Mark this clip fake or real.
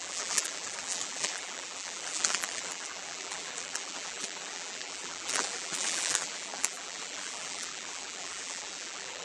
fake